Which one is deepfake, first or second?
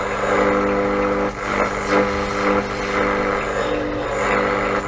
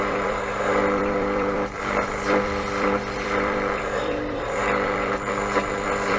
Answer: second